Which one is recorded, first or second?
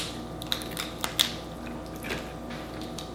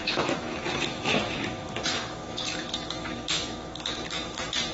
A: first